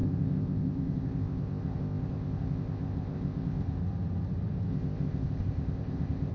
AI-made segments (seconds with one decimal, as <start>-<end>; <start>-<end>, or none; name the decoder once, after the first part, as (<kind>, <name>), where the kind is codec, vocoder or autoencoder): 0.0-3.8 (codec, ZipCodec); 4.7-6.3